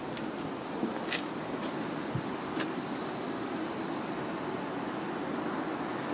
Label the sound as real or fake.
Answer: real